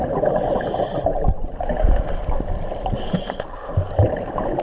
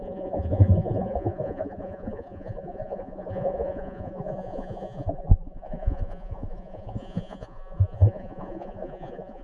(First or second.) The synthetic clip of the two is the second